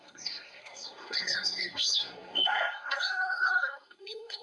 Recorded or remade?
remade